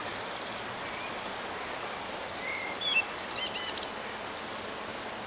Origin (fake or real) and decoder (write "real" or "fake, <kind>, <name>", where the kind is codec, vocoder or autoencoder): real